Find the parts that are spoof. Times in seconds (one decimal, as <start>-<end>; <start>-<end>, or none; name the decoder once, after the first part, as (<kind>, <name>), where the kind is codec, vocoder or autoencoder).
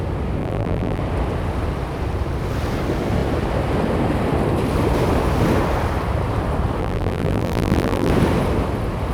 0.4-1.0 (vocoder, BigVGAN v2); 6.8-8.1